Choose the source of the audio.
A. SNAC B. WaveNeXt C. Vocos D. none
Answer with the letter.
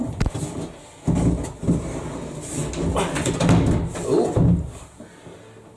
D